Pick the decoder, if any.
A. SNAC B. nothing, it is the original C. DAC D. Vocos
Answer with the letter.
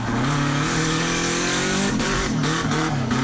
C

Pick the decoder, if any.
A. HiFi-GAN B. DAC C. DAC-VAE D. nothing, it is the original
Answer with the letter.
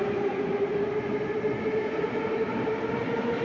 D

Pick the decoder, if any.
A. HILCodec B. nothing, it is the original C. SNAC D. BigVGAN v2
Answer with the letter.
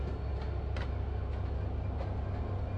B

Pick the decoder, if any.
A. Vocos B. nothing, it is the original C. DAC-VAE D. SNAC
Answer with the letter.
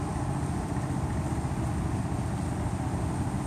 B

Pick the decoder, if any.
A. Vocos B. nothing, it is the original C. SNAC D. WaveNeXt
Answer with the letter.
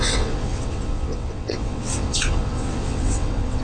D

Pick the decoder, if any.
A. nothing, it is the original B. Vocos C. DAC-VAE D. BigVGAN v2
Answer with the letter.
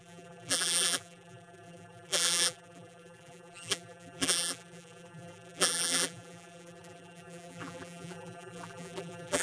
D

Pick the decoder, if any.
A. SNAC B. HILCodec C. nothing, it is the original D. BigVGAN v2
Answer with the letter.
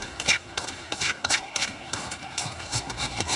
A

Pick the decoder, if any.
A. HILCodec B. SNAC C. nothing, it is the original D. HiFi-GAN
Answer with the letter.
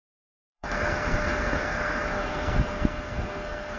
B